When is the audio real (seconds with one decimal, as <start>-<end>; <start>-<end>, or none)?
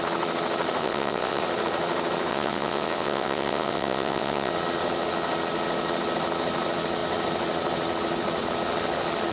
0.0-0.8; 1.4-2.3; 4.5-9.3